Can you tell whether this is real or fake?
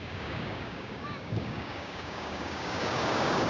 fake